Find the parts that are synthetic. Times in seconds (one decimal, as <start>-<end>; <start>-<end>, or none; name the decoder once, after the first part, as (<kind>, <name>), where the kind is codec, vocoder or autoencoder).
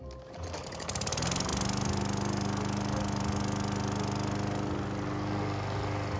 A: none